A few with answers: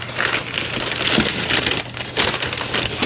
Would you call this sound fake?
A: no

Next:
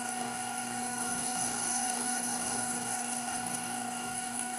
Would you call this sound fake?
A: yes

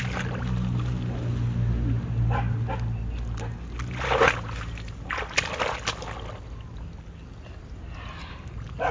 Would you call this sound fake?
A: no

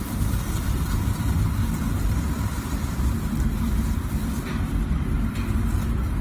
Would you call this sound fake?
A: no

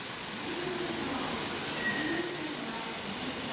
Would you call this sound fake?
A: no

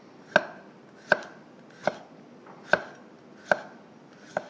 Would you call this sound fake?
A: no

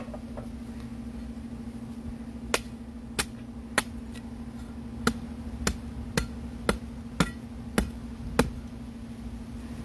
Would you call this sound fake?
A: no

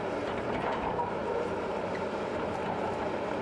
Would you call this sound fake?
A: yes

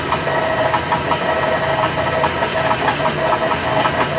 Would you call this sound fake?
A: no